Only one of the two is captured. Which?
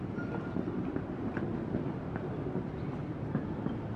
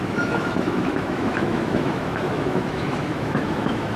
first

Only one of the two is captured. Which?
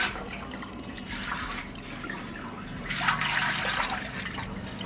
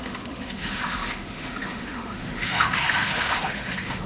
first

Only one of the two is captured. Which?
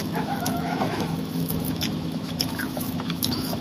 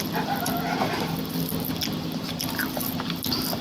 second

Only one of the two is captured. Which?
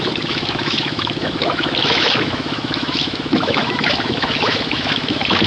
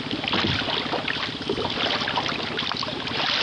second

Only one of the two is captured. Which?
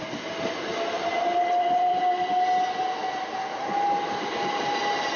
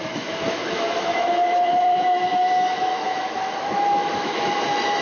first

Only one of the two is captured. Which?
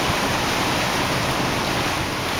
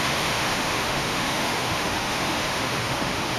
first